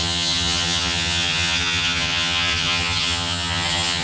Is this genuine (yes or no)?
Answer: no